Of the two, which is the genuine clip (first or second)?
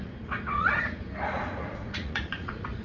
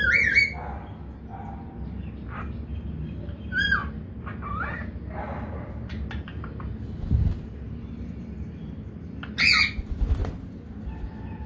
second